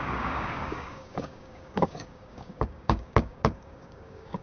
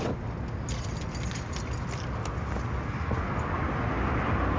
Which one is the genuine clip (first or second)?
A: second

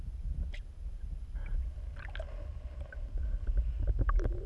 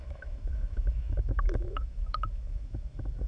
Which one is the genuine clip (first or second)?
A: first